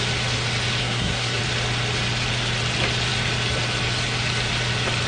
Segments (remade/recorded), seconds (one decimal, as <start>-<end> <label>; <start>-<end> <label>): 0.0-0.8 recorded; 0.8-1.4 remade; 1.4-5.1 recorded